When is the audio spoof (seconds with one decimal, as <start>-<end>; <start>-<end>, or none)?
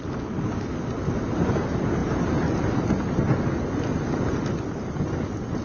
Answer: none